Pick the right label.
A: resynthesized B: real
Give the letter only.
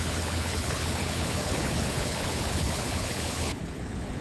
A